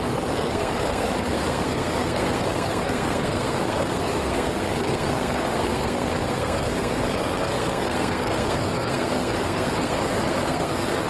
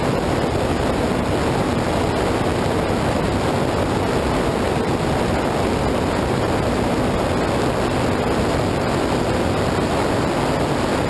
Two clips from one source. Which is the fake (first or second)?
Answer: first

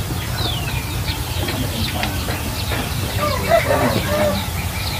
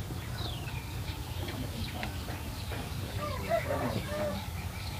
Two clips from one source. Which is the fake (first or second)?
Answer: second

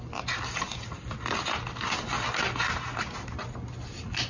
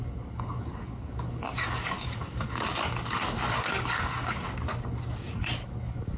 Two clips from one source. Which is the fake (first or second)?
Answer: second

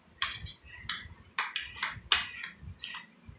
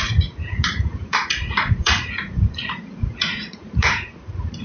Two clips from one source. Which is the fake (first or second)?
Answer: second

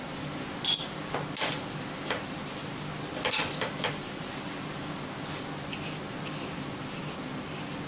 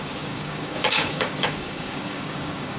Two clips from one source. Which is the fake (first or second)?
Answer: second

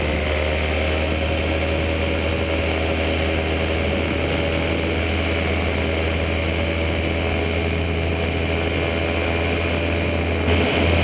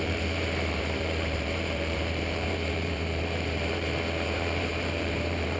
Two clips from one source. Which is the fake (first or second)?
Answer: second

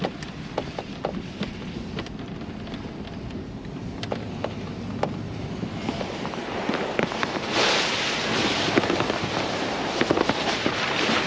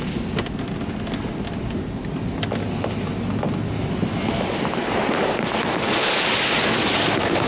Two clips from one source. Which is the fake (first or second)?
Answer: first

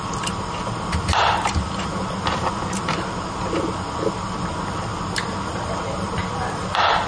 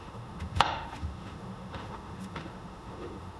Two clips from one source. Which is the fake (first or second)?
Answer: second